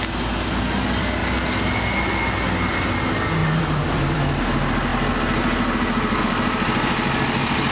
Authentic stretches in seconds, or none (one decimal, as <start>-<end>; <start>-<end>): 0.0-3.4; 4.4-7.7